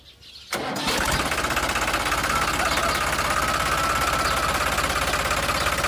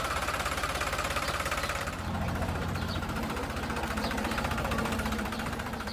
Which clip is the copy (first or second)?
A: second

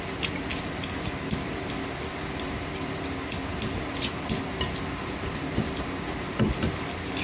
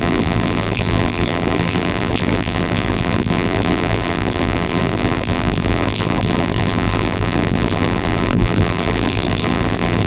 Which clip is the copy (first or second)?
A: second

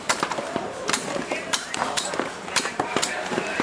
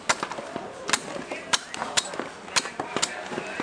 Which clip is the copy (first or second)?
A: first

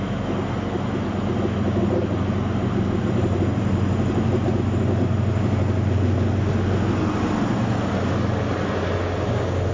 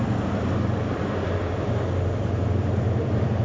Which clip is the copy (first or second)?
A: second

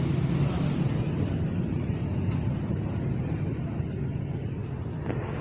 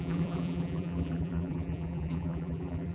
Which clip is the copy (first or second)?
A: second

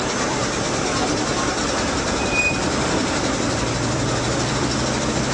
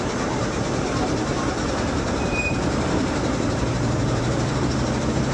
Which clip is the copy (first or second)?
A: second